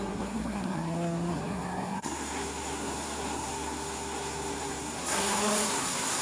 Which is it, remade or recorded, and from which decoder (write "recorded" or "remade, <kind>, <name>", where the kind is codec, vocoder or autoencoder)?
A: remade, codec, SNAC